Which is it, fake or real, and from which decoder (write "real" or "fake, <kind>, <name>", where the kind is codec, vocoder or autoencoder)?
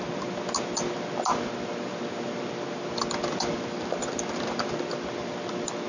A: real